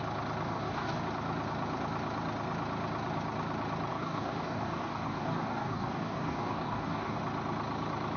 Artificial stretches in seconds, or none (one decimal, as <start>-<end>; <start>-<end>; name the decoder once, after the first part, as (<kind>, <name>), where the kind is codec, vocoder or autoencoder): 0.5-1.0 (codec, DAC); 3.9-7.2